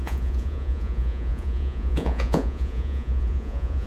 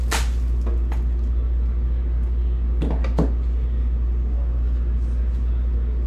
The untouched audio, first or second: second